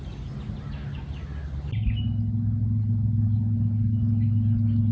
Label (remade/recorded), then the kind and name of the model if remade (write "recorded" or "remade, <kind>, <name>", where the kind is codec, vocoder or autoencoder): recorded